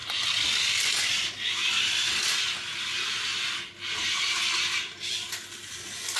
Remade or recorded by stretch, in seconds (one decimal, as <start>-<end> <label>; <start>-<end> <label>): 0.0-6.2 recorded